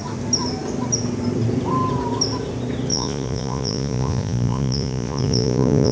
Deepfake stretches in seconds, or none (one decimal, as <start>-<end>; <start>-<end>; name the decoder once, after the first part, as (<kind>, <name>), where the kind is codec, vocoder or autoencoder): 2.9-5.9 (vocoder, Vocos)